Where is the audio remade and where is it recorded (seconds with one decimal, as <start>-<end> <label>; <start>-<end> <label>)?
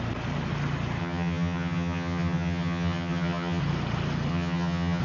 0.0-1.0 recorded; 1.0-3.6 remade; 3.6-4.3 recorded; 4.3-5.0 remade